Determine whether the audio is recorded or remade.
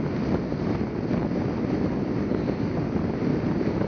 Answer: recorded